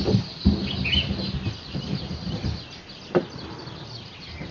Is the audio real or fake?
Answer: real